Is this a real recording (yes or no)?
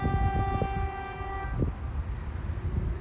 yes